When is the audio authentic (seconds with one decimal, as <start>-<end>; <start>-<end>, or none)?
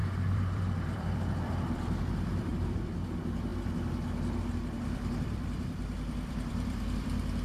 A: 3.5-4.8